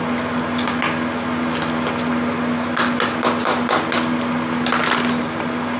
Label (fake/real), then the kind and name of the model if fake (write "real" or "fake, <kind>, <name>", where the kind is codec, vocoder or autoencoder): real